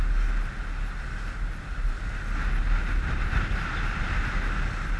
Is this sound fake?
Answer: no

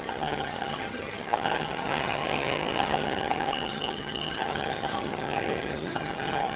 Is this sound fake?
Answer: yes